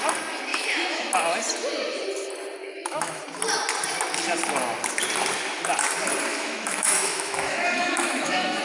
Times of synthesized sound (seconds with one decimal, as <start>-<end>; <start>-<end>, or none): 0.5-1.1; 2.6-3.2; 6.3-8.6